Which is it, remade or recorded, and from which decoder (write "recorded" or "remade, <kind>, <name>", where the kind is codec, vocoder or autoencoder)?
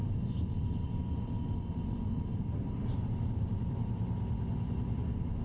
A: remade, vocoder, BigVGAN v2